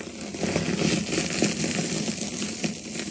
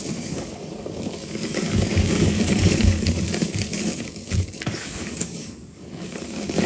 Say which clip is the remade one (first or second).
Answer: second